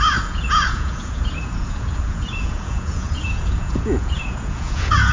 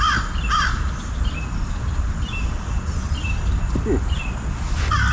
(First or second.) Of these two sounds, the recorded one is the second